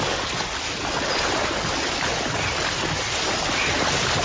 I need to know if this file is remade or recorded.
recorded